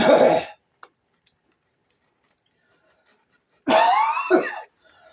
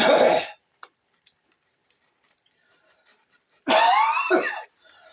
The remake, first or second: second